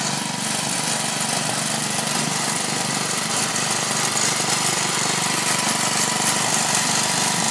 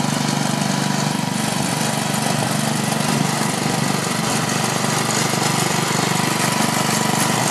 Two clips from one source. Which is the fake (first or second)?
first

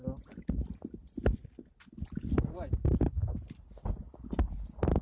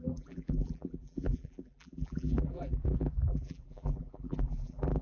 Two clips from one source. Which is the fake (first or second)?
second